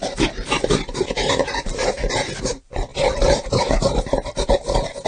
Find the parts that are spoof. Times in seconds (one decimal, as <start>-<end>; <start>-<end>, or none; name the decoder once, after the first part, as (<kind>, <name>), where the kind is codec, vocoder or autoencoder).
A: 2.4-5.1 (vocoder, BigVGAN v2)